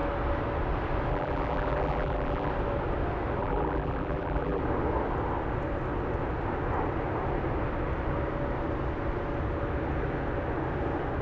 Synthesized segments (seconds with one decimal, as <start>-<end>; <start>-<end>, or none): 1.1-2.5; 3.4-4.6